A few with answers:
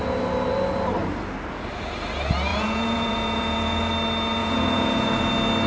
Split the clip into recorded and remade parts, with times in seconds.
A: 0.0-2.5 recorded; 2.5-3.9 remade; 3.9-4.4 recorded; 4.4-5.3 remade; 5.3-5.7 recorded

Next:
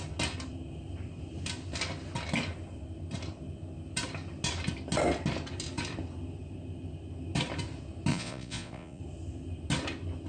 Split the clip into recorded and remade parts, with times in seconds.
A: 0.0-8.1 recorded; 8.1-9.0 remade; 9.0-10.3 recorded

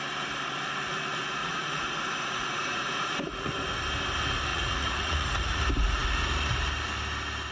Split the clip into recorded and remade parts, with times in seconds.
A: 0.0-1.4 recorded; 1.4-3.5 remade; 3.5-4.5 recorded; 4.5-5.6 remade; 5.6-7.5 recorded